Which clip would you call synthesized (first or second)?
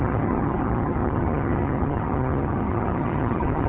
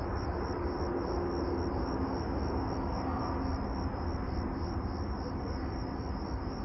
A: first